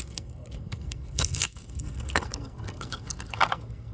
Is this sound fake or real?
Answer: fake